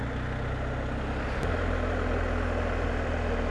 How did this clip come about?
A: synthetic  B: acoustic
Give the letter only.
B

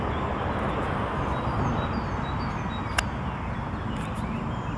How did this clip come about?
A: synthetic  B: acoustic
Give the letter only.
B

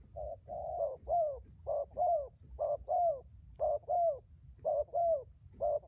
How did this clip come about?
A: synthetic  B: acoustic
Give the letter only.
B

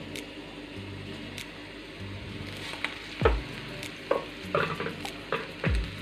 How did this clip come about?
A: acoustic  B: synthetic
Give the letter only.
A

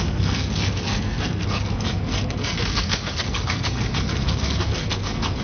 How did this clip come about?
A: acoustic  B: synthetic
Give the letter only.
B